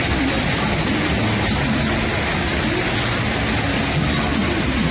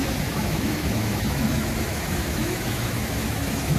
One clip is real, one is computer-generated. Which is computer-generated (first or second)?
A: second